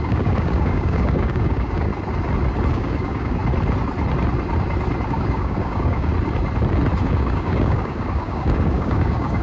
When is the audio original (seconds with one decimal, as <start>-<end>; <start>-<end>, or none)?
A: 1.9-2.7; 3.4-5.1; 6.1-7.0